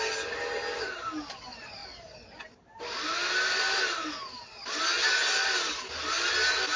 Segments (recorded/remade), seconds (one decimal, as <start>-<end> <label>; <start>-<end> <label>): 0.0-6.8 recorded